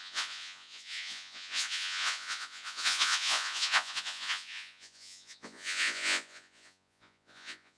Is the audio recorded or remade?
remade